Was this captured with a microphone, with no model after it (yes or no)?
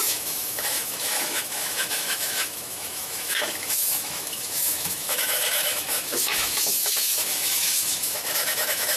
no